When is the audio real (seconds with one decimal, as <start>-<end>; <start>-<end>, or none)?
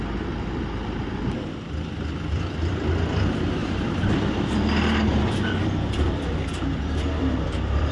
3.6-5.6